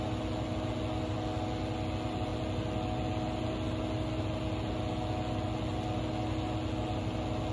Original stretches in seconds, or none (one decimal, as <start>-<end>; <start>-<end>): 0.0-7.5